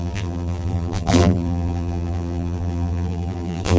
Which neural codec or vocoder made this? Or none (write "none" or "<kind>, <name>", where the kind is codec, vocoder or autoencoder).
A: vocoder, BigVGAN v2